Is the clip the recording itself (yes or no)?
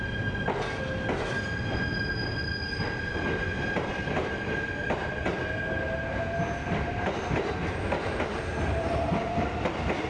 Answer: yes